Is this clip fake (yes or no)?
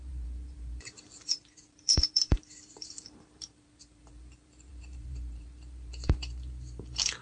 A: yes